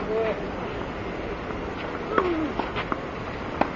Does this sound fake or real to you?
real